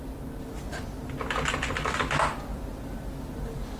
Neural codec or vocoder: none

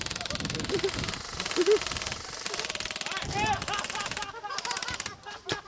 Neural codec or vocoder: none